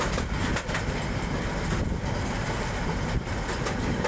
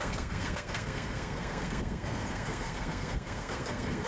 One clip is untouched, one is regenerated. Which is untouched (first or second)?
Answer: first